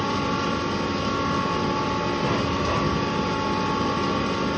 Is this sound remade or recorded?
recorded